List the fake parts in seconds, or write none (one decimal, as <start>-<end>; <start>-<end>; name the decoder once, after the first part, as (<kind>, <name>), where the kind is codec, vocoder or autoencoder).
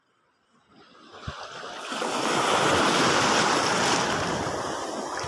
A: 0.0-1.1 (vocoder, BigVGAN v2); 2.7-5.3